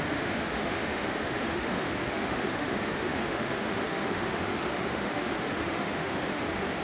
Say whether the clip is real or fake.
fake